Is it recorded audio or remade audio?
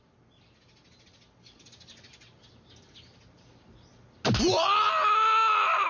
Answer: recorded